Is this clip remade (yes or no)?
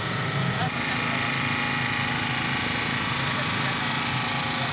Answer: no